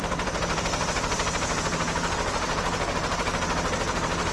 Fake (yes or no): yes